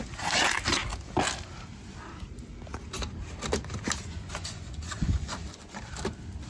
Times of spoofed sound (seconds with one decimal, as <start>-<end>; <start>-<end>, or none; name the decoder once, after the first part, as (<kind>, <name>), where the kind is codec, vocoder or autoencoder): 4.0-5.8 (vocoder, Vocos)